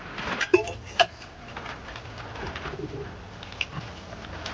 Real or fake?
real